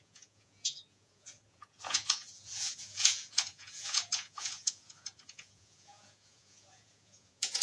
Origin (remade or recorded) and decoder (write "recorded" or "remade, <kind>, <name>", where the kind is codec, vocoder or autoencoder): remade, vocoder, Vocos